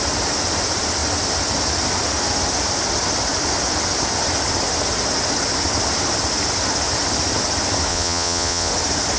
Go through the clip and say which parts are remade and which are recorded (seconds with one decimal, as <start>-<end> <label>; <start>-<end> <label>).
0.0-7.9 recorded; 7.9-8.7 remade; 8.7-9.2 recorded